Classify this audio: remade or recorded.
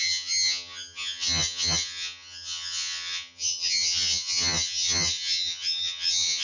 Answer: remade